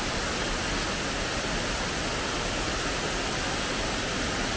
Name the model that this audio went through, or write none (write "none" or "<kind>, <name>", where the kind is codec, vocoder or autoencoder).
none